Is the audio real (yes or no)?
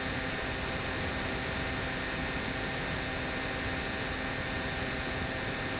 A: yes